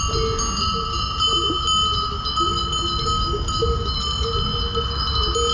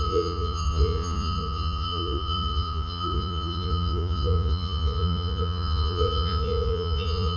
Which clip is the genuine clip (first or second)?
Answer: first